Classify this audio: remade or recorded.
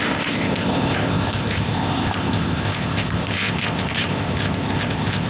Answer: remade